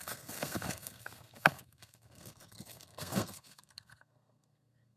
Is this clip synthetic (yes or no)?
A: yes